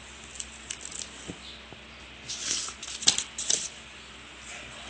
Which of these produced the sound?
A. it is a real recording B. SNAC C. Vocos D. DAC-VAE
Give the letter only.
A